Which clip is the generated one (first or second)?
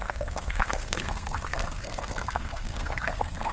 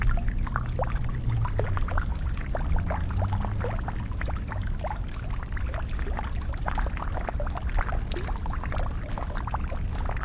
first